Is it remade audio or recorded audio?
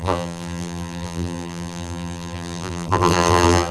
remade